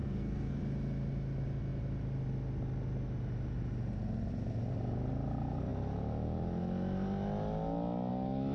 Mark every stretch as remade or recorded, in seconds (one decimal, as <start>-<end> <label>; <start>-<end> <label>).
0.0-0.6 remade; 0.6-8.5 recorded